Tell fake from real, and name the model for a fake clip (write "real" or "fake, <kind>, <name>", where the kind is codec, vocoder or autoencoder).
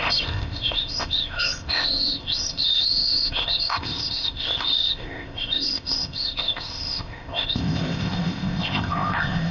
fake, codec, ZipCodec